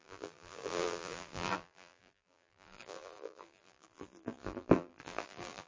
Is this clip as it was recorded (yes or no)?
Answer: no